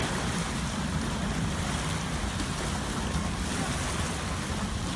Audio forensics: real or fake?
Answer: real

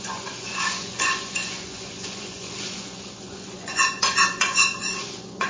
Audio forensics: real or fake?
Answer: fake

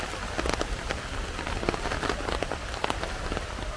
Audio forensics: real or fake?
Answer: real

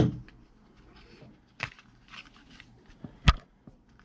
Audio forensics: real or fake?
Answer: real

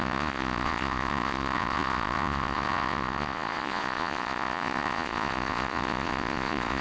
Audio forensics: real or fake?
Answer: fake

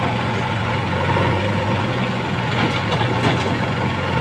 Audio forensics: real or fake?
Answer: fake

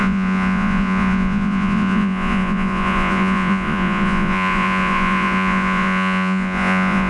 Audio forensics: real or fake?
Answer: fake